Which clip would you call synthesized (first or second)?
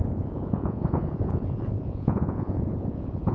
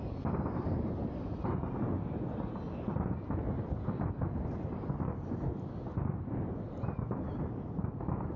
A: first